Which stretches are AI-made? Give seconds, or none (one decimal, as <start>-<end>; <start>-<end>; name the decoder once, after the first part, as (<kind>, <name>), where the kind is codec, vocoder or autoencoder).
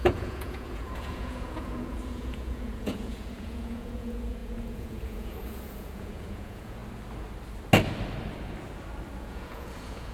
0.0-6.8 (vocoder, Vocos); 9.2-10.1